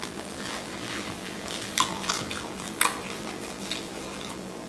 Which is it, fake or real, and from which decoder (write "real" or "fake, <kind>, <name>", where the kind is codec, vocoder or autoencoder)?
fake, vocoder, BigVGAN v2